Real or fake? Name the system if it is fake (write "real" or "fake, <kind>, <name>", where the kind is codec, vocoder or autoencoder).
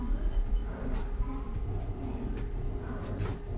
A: real